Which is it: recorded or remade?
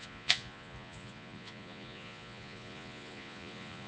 remade